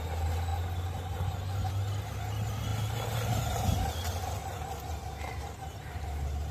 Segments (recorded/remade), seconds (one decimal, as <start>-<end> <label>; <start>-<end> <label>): 0.0-6.5 recorded

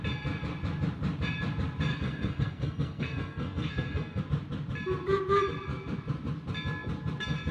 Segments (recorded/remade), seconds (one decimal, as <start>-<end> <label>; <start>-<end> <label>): 0.0-1.9 recorded; 1.9-4.2 remade; 4.2-7.5 recorded